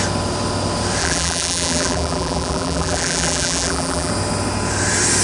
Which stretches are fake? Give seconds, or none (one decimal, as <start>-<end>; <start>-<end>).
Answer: 1.0-4.1